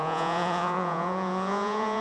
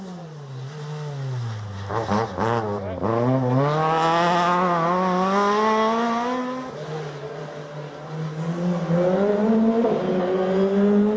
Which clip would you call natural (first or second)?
second